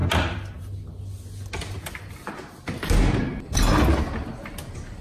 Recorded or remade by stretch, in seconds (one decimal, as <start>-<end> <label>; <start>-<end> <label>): 0.0-5.0 recorded